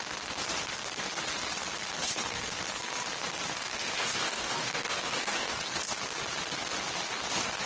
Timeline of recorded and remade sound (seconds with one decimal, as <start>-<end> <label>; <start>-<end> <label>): 0.0-3.6 recorded; 3.6-5.6 remade; 5.6-7.7 recorded